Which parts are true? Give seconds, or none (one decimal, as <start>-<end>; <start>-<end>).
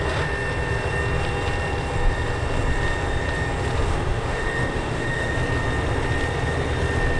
0.0-3.9; 5.3-7.2